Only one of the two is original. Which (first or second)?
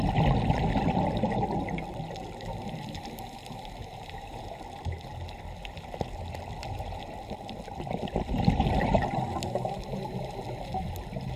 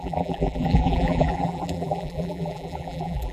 first